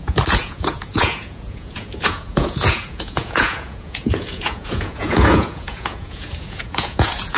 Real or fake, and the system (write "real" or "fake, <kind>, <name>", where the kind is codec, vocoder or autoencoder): fake, vocoder, Vocos